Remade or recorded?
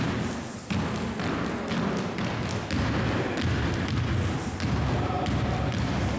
recorded